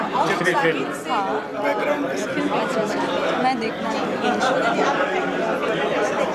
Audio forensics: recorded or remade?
recorded